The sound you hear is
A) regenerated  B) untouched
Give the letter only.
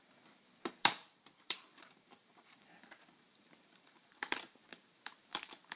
A